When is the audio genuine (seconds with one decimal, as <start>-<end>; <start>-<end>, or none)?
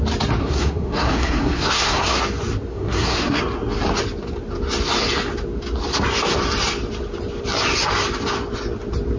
0.0-0.4; 2.2-2.7; 3.4-9.2